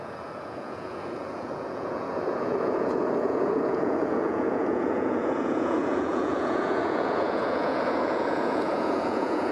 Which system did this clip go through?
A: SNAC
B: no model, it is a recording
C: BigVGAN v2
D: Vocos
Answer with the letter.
D